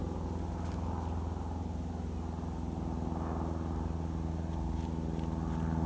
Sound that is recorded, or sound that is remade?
recorded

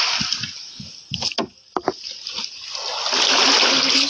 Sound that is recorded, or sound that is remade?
recorded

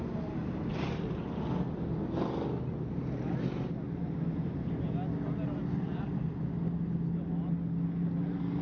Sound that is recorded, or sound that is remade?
recorded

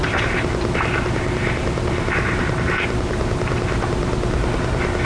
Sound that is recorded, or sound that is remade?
recorded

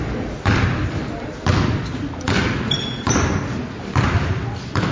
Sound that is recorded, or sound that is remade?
recorded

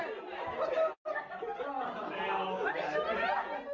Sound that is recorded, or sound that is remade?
recorded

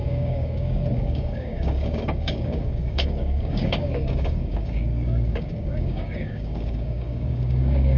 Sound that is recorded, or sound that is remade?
remade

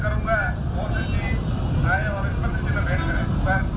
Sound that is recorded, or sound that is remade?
recorded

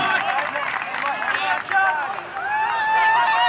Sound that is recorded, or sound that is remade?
recorded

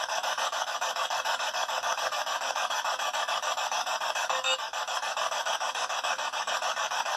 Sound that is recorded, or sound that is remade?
remade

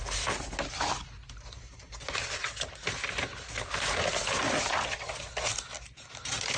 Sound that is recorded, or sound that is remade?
recorded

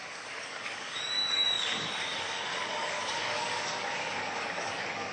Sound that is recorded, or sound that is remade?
remade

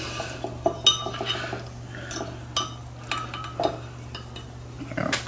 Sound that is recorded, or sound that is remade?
recorded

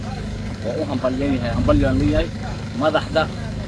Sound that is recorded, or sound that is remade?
remade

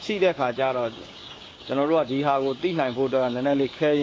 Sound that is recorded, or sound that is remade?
remade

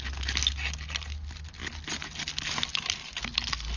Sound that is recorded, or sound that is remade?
recorded